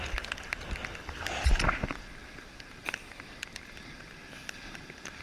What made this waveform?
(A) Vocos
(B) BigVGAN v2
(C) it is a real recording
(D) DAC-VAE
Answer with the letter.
C